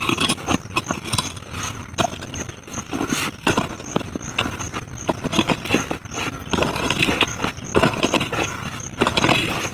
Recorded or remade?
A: recorded